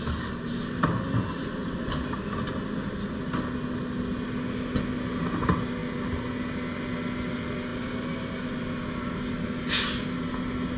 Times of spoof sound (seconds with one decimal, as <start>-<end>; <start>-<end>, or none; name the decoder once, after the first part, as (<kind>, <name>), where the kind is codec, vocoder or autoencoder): none

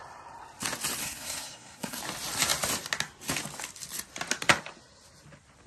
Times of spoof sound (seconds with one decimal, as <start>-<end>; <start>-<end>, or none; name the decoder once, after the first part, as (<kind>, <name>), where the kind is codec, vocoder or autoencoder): 1.0-2.0 (codec, SNAC)

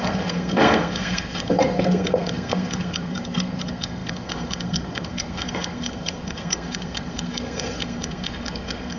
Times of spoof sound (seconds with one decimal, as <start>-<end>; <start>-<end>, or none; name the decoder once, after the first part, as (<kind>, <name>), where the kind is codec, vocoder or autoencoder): 0.0-9.0 (codec, SNAC)

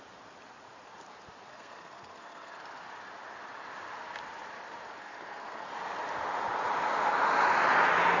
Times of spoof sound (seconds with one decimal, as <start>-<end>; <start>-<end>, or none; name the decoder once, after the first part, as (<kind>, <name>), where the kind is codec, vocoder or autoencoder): 1.5-2.8 (codec, SNAC); 5.0-5.7